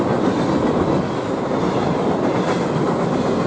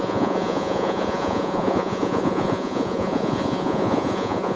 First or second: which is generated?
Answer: second